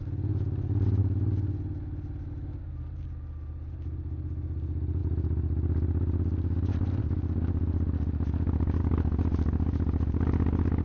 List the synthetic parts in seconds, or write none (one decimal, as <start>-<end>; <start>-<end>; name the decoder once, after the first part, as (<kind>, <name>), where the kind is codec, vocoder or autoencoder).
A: none